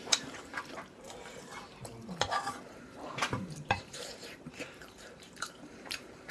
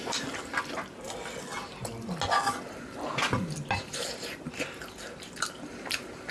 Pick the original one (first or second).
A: second